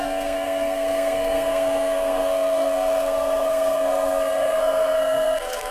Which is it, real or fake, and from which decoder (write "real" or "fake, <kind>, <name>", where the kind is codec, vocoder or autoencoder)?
fake, codec, SNAC